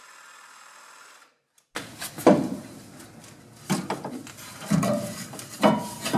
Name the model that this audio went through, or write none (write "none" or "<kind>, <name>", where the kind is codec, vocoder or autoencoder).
none